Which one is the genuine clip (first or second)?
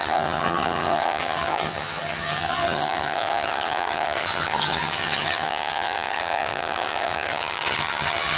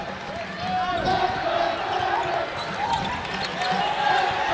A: second